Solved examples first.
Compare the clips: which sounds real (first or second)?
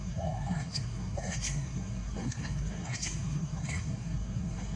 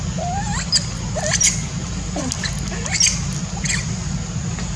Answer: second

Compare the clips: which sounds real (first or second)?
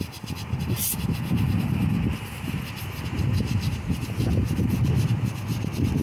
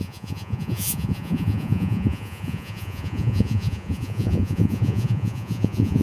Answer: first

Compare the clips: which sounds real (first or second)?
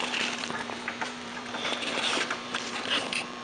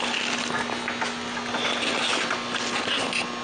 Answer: second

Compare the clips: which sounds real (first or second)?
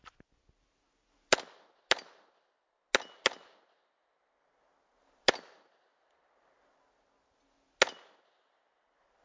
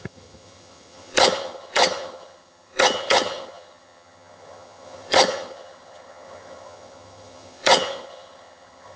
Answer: first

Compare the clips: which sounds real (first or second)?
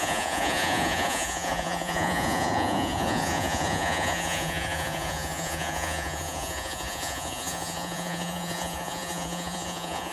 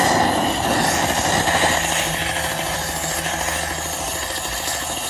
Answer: second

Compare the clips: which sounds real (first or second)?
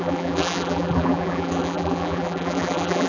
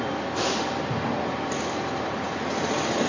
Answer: second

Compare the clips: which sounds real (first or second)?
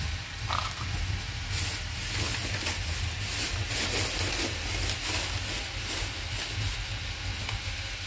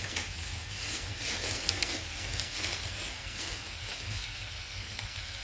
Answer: first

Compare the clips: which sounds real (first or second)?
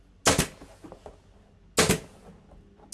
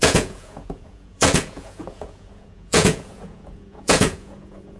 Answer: first